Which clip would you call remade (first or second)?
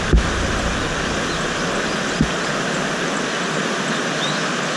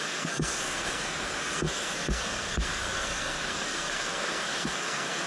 second